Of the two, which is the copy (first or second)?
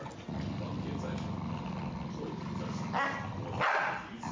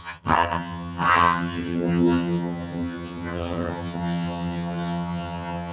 second